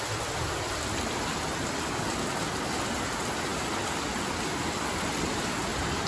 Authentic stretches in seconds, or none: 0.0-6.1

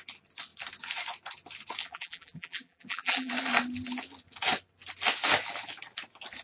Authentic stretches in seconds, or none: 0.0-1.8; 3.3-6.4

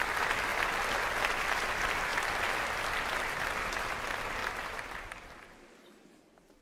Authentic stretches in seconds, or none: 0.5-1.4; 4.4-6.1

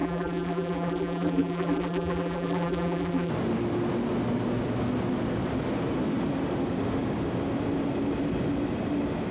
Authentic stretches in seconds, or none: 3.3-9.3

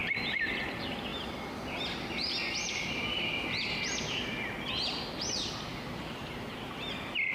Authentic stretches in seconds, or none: 0.0-5.7; 6.7-7.3

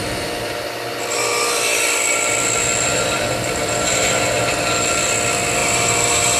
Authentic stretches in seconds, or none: 0.0-1.3; 2.3-2.9; 4.2-5.6